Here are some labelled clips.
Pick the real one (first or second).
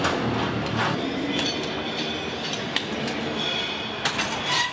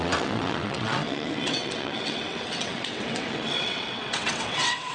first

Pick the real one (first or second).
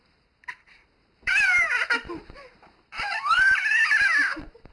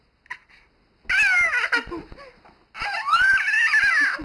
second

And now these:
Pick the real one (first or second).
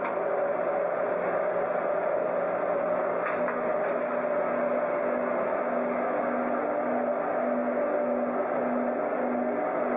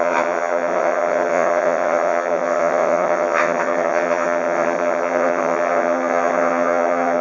first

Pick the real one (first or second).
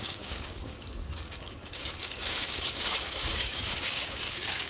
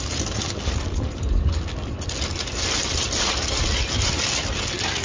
second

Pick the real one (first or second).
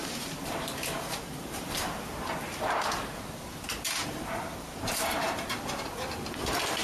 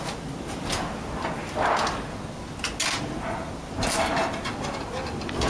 second